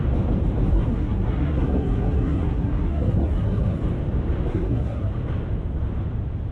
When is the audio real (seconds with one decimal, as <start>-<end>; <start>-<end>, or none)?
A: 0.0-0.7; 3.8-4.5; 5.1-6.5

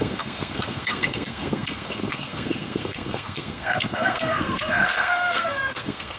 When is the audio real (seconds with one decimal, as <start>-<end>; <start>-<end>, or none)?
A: none

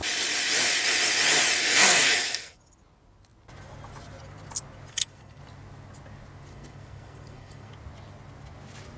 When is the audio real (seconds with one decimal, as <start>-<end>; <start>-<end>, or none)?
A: 0.0-1.6; 2.6-4.9; 5.4-6.5; 7.7-9.0